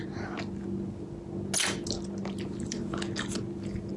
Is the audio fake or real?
real